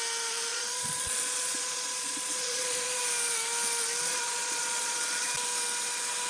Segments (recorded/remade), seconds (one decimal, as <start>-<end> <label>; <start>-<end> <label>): 0.0-0.5 recorded; 0.5-3.0 remade; 3.0-4.1 recorded; 4.1-5.3 remade; 5.3-6.3 recorded